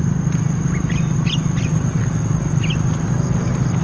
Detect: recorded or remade recorded